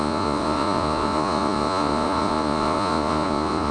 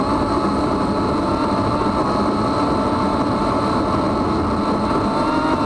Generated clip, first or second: first